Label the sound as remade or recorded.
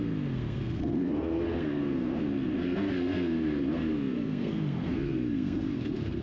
remade